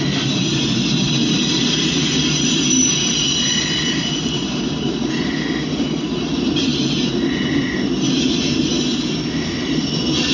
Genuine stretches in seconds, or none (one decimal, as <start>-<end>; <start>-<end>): 6.7-9.5